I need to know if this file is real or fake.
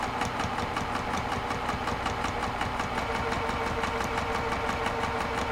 real